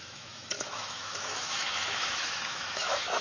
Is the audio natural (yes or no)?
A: no